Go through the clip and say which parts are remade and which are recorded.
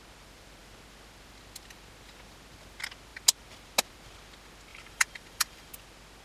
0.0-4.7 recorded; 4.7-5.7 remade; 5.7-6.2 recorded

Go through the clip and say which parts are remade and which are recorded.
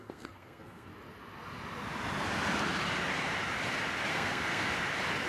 0.0-0.9 remade; 0.9-4.1 recorded; 4.1-4.7 remade; 4.7-5.3 recorded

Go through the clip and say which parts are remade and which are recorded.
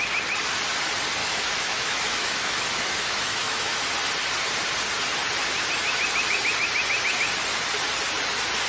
0.0-1.2 recorded; 1.2-3.8 remade; 3.8-8.7 recorded